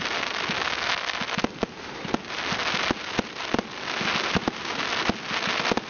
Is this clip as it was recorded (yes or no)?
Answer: yes